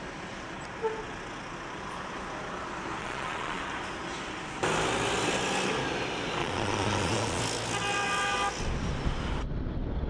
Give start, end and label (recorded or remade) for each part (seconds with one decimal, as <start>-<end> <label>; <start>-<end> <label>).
0.0-3.0 recorded; 3.0-3.6 remade; 3.6-6.4 recorded; 6.4-7.4 remade; 7.4-10.1 recorded